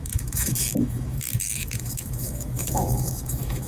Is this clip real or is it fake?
fake